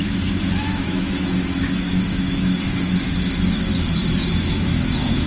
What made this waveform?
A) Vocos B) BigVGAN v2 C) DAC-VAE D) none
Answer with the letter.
C